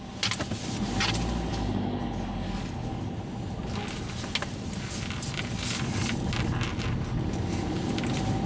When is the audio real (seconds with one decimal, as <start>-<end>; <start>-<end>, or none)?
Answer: 0.0-1.5; 3.1-8.5